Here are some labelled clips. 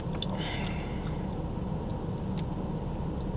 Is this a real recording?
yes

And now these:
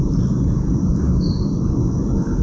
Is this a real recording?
yes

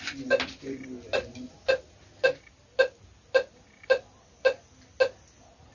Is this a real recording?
yes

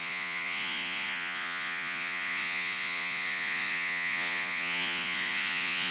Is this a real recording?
no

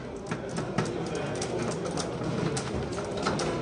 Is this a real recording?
yes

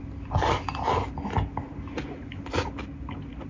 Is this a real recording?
yes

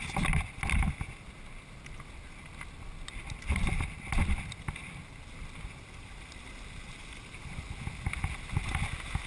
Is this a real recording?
yes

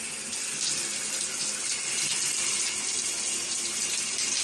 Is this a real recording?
yes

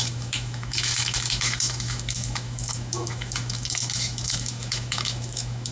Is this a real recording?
no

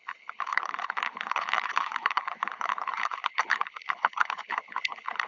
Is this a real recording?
no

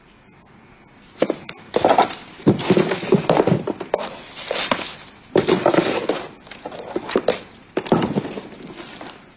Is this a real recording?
no